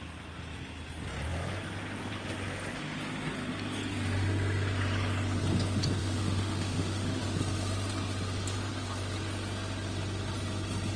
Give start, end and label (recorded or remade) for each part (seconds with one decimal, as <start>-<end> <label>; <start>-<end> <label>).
0.0-6.0 recorded; 6.0-7.2 remade; 7.2-11.0 recorded